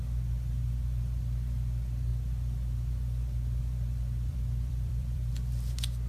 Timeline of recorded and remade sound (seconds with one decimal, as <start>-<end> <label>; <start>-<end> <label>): 0.0-4.3 recorded; 4.3-5.3 remade; 5.3-6.1 recorded